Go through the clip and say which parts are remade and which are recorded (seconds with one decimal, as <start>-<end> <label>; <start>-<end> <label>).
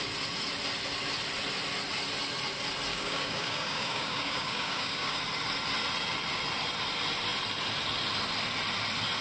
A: 0.0-2.9 recorded; 2.9-5.2 remade; 5.2-9.2 recorded